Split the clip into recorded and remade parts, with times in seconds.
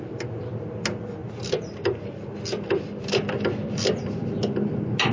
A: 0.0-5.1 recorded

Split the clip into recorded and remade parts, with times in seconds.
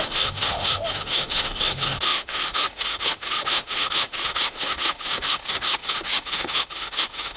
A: 0.0-7.4 remade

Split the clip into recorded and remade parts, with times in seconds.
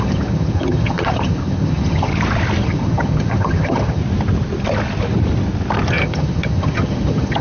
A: 0.0-2.1 remade; 2.1-2.6 recorded; 2.6-4.0 remade; 4.0-5.9 recorded; 5.9-7.4 remade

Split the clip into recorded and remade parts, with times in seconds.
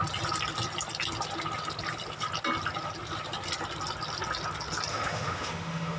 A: 0.0-4.9 recorded; 4.9-6.0 remade